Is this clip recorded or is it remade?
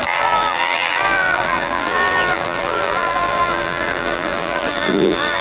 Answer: remade